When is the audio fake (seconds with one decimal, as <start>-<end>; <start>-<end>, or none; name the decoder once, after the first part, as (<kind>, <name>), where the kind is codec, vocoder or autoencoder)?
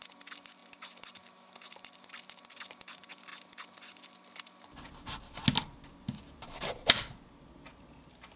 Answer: none